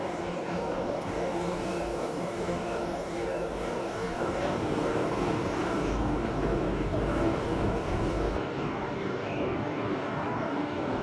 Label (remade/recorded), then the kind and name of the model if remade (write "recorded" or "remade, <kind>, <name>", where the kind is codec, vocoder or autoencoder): remade, codec, DAC